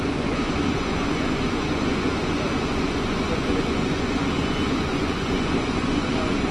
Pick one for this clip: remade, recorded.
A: remade